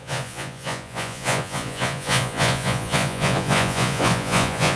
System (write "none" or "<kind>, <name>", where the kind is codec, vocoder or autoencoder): vocoder, Vocos